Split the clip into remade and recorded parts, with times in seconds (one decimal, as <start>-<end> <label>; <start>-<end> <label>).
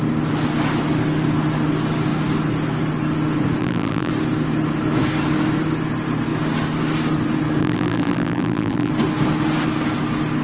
0.0-3.6 recorded; 3.6-4.1 remade; 4.1-7.6 recorded; 7.6-8.9 remade; 8.9-10.4 recorded